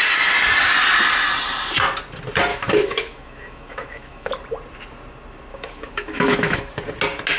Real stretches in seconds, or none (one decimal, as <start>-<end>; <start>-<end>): 0.0-2.5; 4.3-5.5; 6.7-7.4